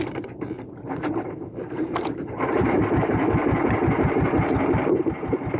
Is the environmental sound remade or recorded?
remade